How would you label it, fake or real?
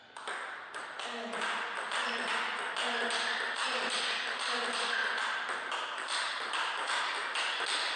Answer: real